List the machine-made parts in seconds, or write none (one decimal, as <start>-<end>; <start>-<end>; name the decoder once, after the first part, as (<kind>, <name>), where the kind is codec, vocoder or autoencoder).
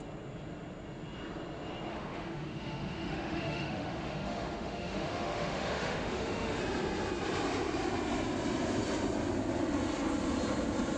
1.9-6.6 (autoencoder, DAC-VAE)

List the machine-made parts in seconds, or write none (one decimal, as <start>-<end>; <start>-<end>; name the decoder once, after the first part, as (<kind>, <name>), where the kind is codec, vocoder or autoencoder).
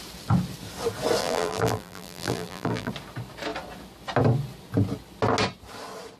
1.2-2.9 (vocoder, BigVGAN v2)